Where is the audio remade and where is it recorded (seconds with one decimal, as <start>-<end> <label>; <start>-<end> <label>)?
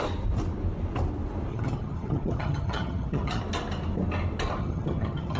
0.0-1.5 recorded; 1.5-3.4 remade; 3.4-4.6 recorded; 4.6-5.4 remade